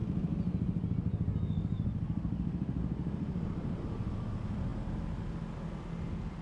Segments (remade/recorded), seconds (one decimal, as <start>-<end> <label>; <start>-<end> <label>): 0.0-6.4 recorded